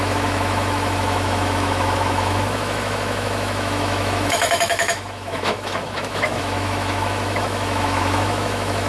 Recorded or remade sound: remade